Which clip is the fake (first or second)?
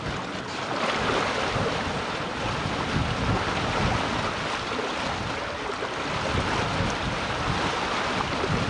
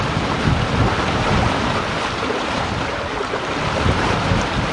second